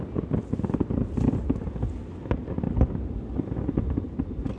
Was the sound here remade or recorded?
recorded